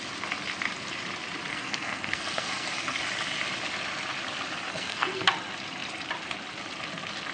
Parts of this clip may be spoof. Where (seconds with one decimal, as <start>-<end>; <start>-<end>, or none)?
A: 1.5-3.0; 4.7-5.3